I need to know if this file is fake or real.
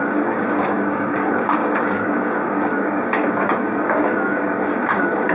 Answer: fake